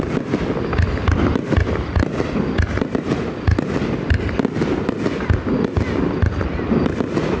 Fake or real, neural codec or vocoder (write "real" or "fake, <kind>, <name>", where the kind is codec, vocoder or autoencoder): real